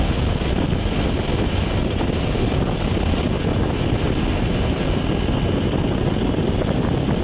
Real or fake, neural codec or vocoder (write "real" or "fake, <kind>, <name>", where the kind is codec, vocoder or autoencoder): real